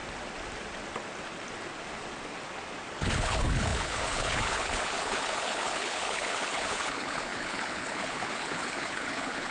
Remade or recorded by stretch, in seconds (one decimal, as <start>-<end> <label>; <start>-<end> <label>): 0.0-2.9 recorded; 2.9-9.5 remade